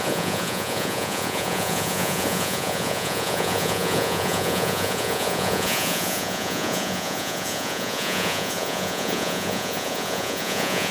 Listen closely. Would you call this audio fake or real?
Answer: fake